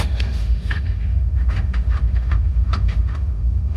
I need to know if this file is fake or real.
fake